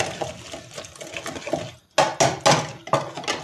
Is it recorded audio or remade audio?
recorded